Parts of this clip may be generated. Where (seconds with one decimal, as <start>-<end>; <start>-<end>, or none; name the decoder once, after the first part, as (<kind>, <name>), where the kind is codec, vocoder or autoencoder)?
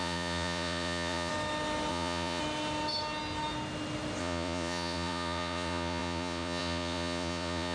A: 0.0-1.3 (vocoder, Vocos); 1.9-2.4; 4.2-7.7